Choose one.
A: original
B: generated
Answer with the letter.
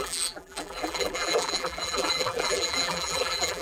B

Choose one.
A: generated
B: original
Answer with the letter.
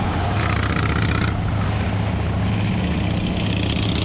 B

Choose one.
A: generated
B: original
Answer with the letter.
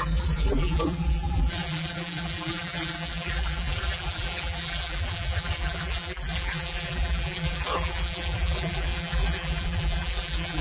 A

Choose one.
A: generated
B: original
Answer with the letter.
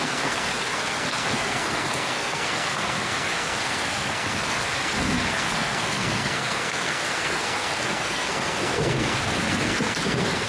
A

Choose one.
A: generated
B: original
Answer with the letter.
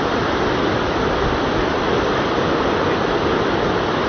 B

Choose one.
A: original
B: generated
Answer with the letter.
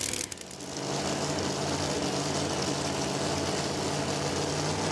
A